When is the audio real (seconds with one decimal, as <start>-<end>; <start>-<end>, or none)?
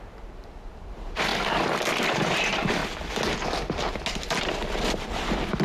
1.3-2.0; 2.8-4.4